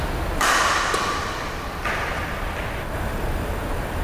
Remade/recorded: recorded